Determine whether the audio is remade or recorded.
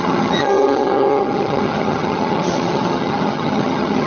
remade